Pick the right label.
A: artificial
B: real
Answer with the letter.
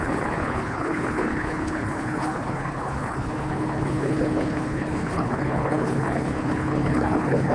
A